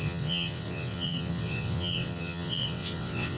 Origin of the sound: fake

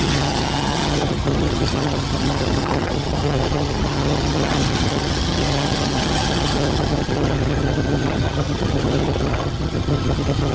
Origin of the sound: fake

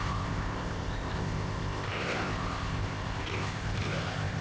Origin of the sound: fake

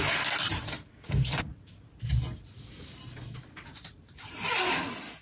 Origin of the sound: fake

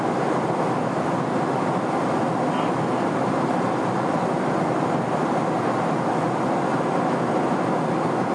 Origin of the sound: real